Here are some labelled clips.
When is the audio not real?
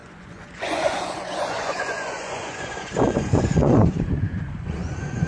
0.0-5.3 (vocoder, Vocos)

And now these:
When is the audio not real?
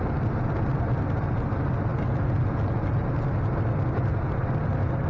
none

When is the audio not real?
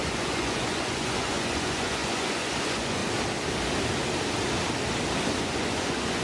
0.0-3.0 (vocoder, Vocos); 5.4-6.2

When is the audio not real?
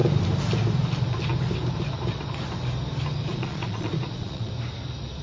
3.3-4.5 (vocoder, Vocos)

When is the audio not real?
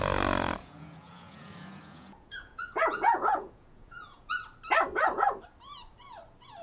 0.6-4.3 (vocoder, Vocos)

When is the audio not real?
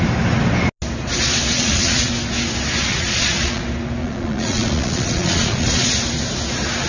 1.5-2.1 (vocoder, Vocos); 2.9-3.6; 4.0-5.9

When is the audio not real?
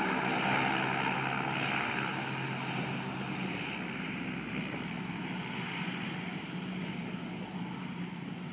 none